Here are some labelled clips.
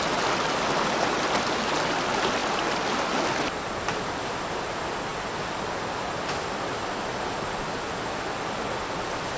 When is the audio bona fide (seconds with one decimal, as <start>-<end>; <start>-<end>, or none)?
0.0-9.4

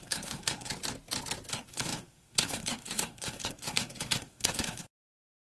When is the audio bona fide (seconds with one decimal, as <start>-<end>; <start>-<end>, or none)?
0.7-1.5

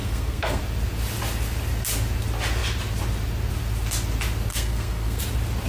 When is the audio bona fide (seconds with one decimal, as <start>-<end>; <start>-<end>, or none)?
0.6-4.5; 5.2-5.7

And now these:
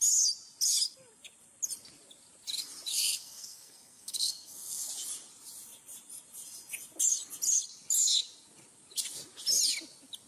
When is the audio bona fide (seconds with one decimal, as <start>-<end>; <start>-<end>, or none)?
0.0-2.9; 4.9-10.3

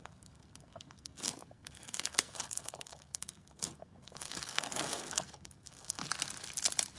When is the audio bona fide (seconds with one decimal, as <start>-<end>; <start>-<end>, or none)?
6.0-7.0

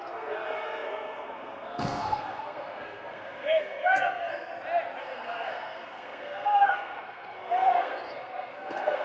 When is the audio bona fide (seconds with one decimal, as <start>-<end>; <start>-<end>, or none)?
4.5-5.0